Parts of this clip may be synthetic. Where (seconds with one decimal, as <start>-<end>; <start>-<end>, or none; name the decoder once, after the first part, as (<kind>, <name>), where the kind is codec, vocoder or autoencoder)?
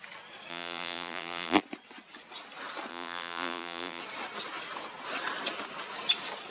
0.5-1.6 (vocoder, BigVGAN v2); 2.9-4.0